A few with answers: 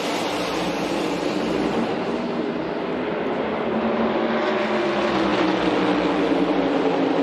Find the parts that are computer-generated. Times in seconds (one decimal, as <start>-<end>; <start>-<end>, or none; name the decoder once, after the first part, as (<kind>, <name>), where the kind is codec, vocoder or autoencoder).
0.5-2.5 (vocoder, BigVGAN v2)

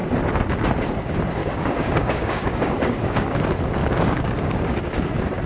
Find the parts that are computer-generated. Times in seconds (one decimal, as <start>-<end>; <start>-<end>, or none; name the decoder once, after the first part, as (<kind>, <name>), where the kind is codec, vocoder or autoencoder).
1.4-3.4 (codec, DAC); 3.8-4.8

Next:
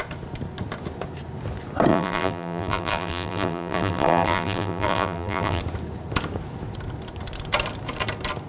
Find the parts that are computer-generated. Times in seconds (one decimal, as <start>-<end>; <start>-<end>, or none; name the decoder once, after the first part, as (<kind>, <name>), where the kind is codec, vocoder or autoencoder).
1.9-5.6 (vocoder, BigVGAN v2)

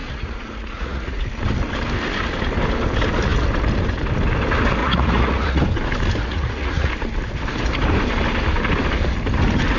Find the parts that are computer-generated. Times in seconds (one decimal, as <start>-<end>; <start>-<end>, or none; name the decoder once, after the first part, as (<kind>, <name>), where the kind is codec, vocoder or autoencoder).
0.0-1.2 (vocoder, Vocos); 4.8-5.6; 6.3-6.9

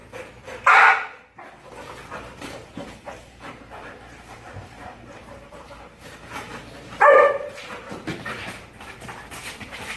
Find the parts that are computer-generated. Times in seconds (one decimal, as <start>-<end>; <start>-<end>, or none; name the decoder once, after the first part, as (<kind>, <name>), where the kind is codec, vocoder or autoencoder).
2.4-6.6 (vocoder, BigVGAN v2); 7.1-10.0